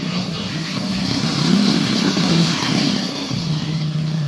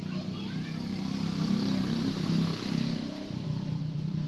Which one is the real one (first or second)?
second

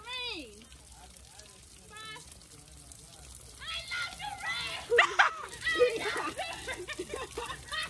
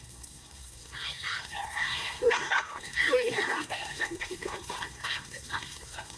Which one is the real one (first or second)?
first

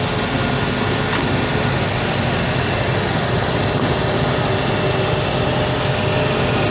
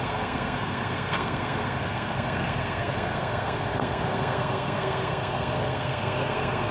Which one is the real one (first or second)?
first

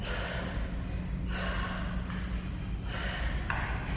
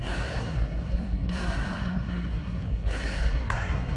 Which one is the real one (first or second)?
first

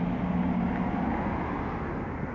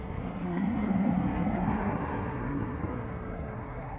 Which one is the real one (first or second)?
first